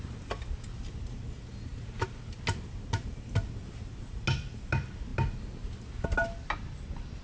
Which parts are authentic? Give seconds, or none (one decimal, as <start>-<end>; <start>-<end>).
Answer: 0.0-7.2